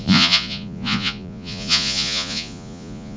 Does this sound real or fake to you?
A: fake